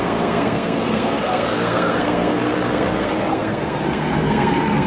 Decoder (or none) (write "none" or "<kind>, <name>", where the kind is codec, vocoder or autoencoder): codec, SNAC